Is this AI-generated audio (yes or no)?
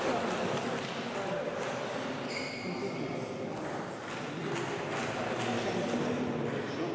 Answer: no